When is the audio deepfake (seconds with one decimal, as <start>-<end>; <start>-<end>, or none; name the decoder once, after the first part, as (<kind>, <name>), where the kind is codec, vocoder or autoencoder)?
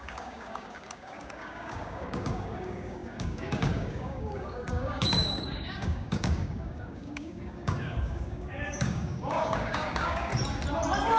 0.0-10.3 (codec, DAC)